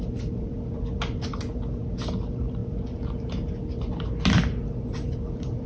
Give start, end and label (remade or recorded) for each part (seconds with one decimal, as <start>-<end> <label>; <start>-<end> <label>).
0.0-5.7 recorded